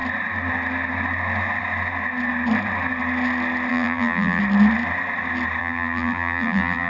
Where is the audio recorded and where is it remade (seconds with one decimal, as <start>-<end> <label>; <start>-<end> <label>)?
0.0-3.7 recorded; 3.7-4.4 remade; 4.4-5.6 recorded; 5.6-6.9 remade